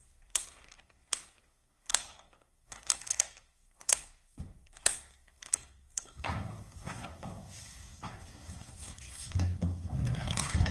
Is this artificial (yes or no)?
yes